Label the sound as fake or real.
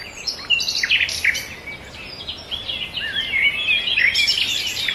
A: real